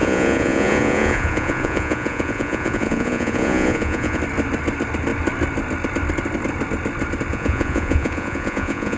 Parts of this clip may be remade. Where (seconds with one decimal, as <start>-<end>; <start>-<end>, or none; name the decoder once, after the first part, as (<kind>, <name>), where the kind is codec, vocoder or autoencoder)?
0.0-4.2 (vocoder, Vocos); 7.3-9.0